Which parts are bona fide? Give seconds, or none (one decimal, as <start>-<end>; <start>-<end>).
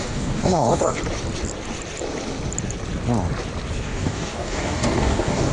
1.0-3.7